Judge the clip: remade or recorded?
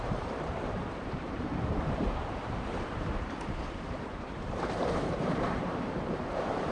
remade